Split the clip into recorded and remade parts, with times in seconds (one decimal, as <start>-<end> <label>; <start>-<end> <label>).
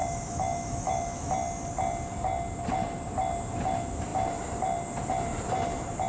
0.0-1.3 remade; 1.3-6.1 recorded